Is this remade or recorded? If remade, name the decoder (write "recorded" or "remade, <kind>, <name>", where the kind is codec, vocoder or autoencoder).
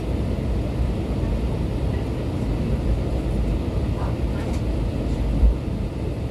recorded